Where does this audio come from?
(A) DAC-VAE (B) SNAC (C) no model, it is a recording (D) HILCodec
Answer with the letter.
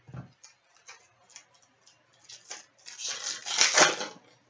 C